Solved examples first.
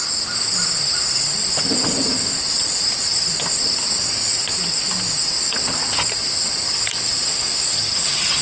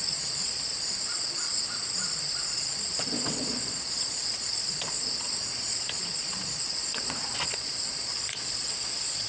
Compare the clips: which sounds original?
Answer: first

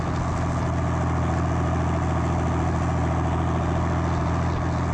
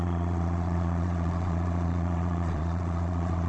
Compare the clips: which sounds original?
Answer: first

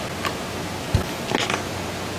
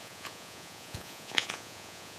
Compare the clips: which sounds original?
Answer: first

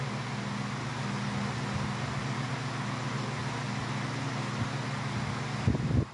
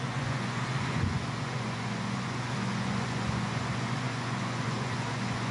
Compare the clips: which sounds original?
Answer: first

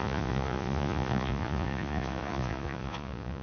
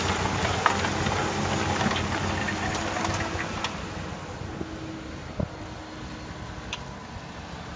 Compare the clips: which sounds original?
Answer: second